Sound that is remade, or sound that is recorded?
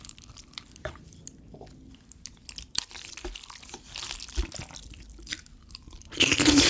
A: recorded